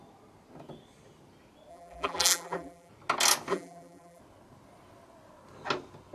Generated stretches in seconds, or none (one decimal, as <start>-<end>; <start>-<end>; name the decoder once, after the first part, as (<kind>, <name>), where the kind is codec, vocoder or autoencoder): 1.7-2.9 (vocoder, BigVGAN v2); 3.5-4.2